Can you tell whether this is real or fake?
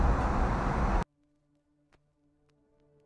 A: real